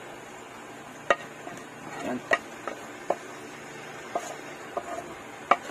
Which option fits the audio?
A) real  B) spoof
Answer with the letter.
A